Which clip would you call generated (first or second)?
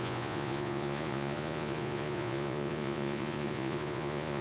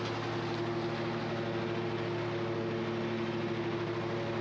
first